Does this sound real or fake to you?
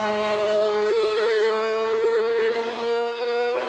fake